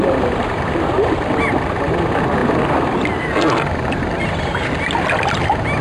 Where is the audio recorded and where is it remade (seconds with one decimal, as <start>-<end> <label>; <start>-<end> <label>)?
0.0-2.4 recorded; 2.4-3.2 remade; 3.2-5.8 recorded